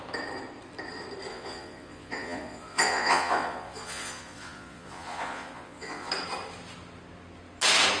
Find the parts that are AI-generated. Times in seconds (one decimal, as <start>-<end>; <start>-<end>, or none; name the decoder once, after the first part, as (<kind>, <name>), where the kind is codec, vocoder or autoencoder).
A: 1.3-6.1 (vocoder, Vocos)